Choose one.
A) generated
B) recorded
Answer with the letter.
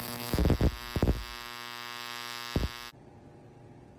B